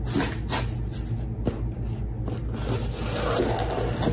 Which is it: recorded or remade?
recorded